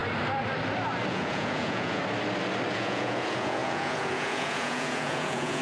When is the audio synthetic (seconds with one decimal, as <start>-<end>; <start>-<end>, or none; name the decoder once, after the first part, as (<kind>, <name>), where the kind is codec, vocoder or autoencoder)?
1.1-2.0 (vocoder, Vocos); 2.7-5.6